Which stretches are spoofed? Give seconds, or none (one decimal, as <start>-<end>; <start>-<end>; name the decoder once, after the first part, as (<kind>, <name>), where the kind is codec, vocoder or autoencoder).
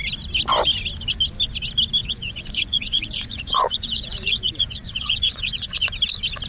2.0-5.9 (vocoder, Vocos)